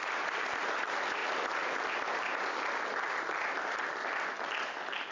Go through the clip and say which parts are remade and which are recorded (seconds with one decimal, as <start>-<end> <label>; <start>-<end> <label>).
0.0-2.3 remade; 2.3-3.6 recorded; 3.6-5.1 remade